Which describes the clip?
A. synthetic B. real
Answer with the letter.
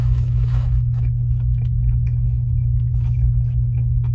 A